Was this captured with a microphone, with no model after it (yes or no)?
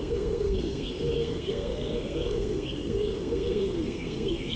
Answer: no